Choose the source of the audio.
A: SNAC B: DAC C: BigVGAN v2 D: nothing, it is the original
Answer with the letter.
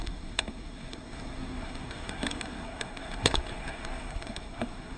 A